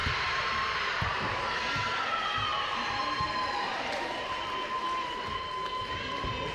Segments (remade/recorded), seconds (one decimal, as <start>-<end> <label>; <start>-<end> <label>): 0.0-1.6 remade; 1.6-2.5 recorded; 2.5-5.5 remade; 5.5-6.5 recorded